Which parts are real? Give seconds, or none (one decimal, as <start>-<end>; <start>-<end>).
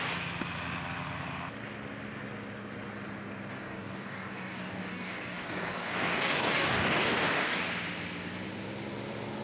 0.0-3.5; 7.6-9.4